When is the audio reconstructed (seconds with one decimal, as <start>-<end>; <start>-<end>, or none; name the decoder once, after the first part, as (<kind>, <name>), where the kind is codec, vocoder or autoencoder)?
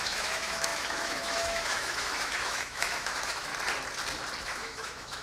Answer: 0.0-3.5 (autoencoder, DAC-VAE); 4.4-5.2